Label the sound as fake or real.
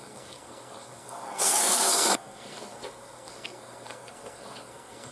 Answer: fake